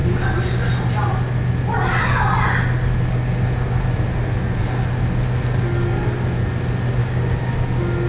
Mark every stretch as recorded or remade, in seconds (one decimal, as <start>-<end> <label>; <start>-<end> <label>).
0.0-7.0 recorded; 7.0-7.5 remade; 7.5-8.1 recorded